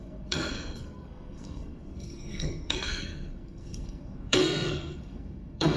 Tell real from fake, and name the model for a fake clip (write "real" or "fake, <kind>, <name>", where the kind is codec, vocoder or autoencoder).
fake, codec, SNAC